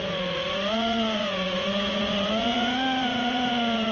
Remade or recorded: remade